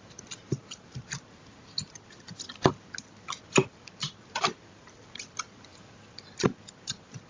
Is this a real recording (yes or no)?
yes